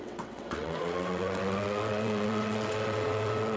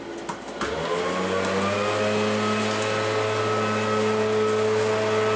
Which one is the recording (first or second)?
second